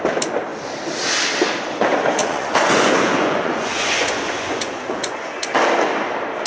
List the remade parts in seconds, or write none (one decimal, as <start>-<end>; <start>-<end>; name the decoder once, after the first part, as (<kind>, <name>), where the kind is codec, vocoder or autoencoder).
2.2-5.3 (vocoder, Vocos)